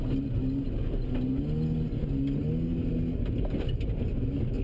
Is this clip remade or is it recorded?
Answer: recorded